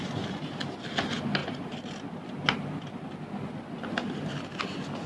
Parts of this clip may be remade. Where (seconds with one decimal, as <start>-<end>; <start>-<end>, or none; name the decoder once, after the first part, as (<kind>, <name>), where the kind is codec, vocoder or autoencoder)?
1.4-1.9 (vocoder, BigVGAN v2)